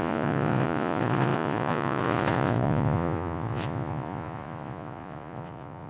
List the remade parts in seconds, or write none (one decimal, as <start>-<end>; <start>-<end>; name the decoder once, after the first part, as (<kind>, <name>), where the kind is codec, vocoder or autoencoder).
0.0-5.9 (vocoder, Vocos)